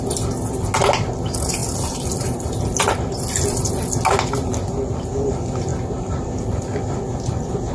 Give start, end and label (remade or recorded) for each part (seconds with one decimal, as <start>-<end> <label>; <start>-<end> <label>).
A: 0.0-1.6 recorded; 1.6-3.7 remade; 3.7-5.7 recorded; 5.7-7.7 remade